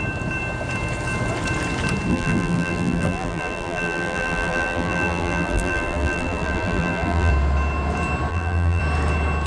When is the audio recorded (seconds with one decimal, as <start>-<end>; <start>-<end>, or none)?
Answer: 0.0-2.1; 7.3-8.3; 8.8-9.5